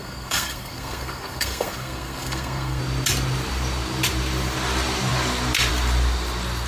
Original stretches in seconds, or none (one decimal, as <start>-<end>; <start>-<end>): 2.8-6.7